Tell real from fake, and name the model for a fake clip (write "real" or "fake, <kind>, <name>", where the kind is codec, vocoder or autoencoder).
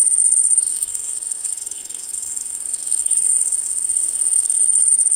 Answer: fake, codec, SNAC